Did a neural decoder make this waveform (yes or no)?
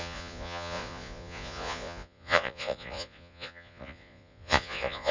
yes